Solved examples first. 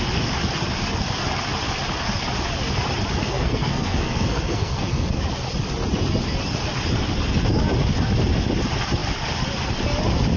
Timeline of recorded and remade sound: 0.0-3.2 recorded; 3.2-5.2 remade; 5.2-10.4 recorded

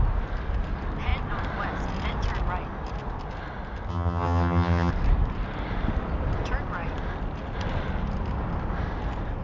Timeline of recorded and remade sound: 0.0-3.9 recorded; 3.9-4.9 remade; 4.9-9.4 recorded

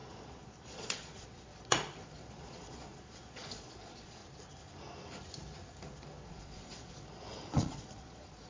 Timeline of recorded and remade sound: 0.0-4.2 remade; 4.2-6.3 recorded; 6.3-8.5 remade

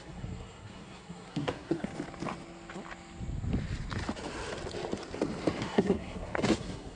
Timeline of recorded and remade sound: 0.0-1.9 remade; 1.9-5.6 recorded; 5.6-7.0 remade